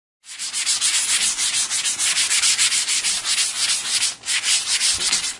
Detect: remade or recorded recorded